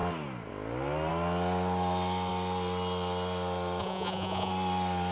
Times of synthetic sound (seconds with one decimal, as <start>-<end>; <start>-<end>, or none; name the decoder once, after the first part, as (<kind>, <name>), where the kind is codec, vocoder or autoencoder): 3.8-4.5 (vocoder, Vocos)